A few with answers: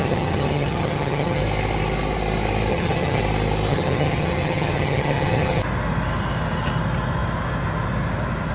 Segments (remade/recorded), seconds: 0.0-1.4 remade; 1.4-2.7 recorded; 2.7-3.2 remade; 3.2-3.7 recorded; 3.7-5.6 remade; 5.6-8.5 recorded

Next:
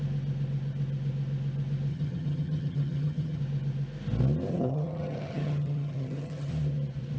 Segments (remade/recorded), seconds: 0.0-1.9 recorded; 1.9-3.4 remade; 3.4-4.5 recorded; 4.5-6.5 remade; 6.5-7.2 recorded

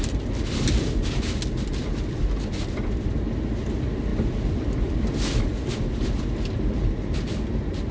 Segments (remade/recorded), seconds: 0.0-7.9 recorded

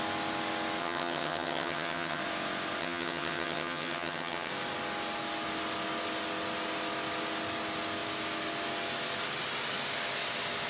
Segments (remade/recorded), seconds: 0.0-0.8 recorded; 0.8-2.2 remade; 2.2-2.8 recorded; 2.8-4.5 remade; 4.5-10.7 recorded

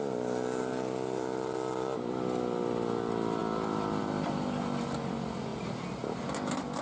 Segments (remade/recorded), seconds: 0.0-6.8 recorded

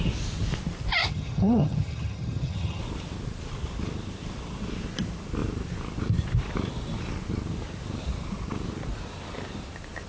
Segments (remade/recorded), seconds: 0.0-1.0 recorded; 1.0-2.8 remade; 2.8-10.1 recorded

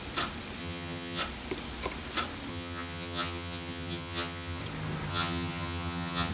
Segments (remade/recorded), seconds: 0.0-0.6 recorded; 0.6-1.2 remade; 1.2-2.5 recorded; 2.5-4.6 remade; 4.6-5.1 recorded; 5.1-6.3 remade

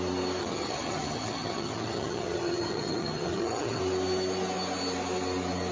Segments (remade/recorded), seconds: 0.0-0.4 recorded; 0.4-3.8 remade; 3.8-5.7 recorded